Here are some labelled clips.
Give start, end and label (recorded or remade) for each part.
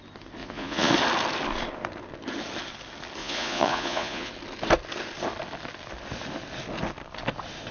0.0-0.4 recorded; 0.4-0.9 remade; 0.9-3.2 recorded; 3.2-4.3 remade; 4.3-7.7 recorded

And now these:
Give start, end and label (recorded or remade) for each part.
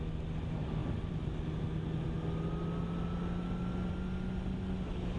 0.0-5.2 recorded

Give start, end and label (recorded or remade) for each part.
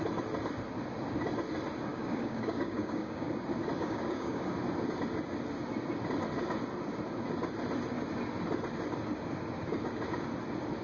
0.0-1.9 recorded; 1.9-3.3 remade; 3.3-3.8 recorded; 3.8-4.4 remade; 4.4-10.8 recorded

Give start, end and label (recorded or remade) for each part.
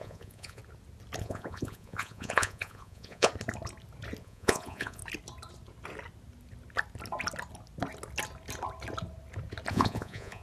0.0-0.6 remade; 0.6-1.2 recorded; 1.2-3.3 remade; 3.3-4.2 recorded; 4.2-5.0 remade; 5.0-9.7 recorded; 9.7-10.4 remade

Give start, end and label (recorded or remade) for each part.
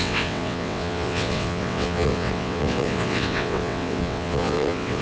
0.0-5.0 remade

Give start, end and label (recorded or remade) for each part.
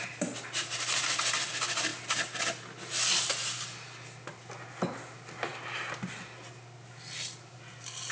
0.0-8.1 recorded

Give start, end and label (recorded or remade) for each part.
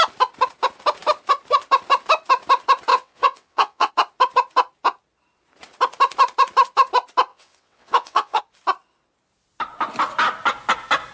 0.0-2.9 recorded; 2.9-3.9 remade; 3.9-7.3 recorded; 7.3-8.4 remade; 8.4-11.1 recorded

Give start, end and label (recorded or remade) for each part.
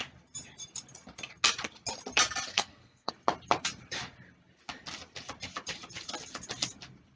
0.0-2.5 recorded; 2.5-3.1 remade; 3.1-7.2 recorded